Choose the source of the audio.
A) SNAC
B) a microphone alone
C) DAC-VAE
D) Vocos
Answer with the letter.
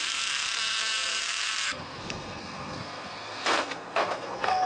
A